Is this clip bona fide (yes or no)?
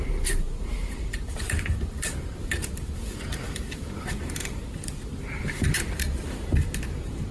no